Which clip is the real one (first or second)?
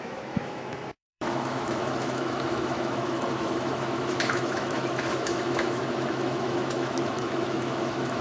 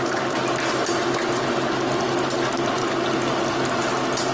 second